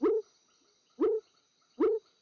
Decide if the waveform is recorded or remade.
recorded